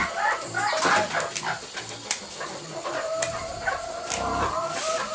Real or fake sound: real